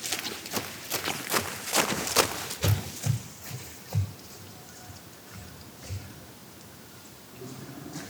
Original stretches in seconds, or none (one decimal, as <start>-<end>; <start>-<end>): 0.0-6.4; 7.3-8.1